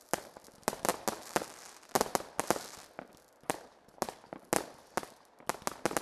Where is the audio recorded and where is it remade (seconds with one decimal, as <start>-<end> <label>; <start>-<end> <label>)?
0.0-6.0 recorded